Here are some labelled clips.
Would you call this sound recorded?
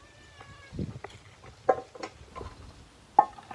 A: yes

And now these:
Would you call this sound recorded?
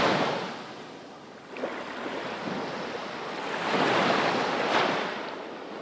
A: yes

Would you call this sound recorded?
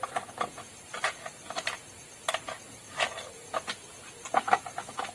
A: yes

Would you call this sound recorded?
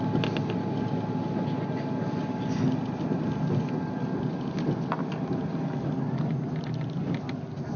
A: yes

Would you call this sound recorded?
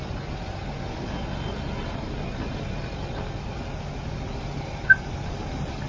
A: yes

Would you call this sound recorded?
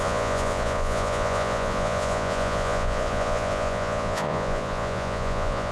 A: no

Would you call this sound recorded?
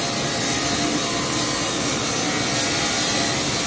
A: yes